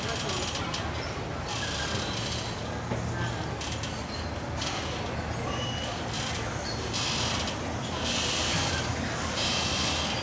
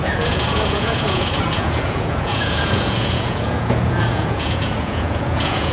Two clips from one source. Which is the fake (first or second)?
second